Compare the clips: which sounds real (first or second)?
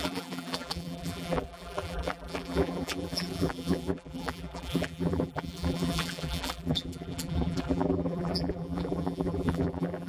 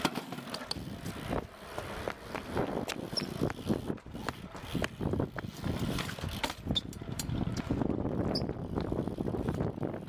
second